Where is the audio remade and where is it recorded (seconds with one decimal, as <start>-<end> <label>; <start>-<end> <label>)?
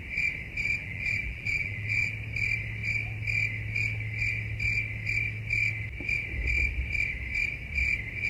0.0-0.8 recorded; 0.8-2.1 remade; 2.1-8.3 recorded